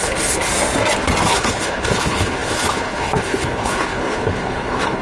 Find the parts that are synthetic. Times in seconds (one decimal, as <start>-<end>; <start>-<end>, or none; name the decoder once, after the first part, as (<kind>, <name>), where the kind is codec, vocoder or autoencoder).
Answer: 0.0-0.5 (codec, HILCodec); 1.3-5.0